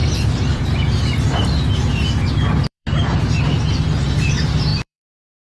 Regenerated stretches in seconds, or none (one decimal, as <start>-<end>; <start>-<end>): 0.0-5.6